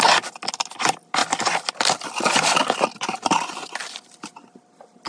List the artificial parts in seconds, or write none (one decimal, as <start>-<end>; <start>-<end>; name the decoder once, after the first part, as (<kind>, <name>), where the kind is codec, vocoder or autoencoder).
none